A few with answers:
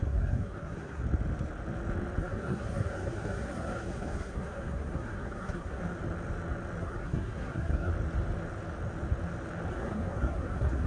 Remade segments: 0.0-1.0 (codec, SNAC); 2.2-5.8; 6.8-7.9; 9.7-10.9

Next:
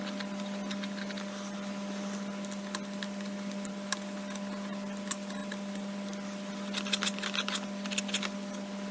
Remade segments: none

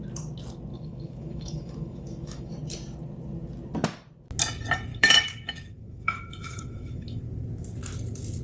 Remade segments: 0.7-2.5 (autoencoder, DAC-VAE); 4.9-7.2

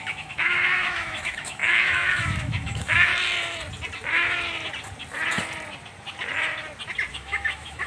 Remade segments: 0.0-3.1 (autoencoder, DAC-VAE); 7.1-7.9

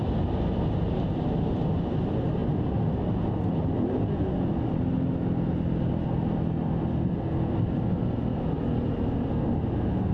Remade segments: none

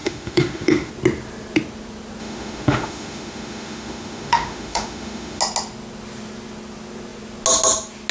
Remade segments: 0.0-0.9 (autoencoder, DAC-VAE); 2.2-5.4

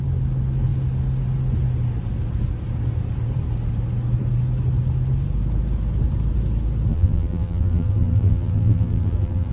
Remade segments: 6.9-9.5 (vocoder, BigVGAN v2)

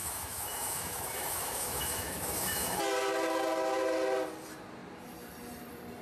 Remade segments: 0.0-2.8 (autoencoder, DAC-VAE)